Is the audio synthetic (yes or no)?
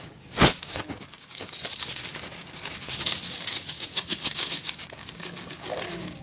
yes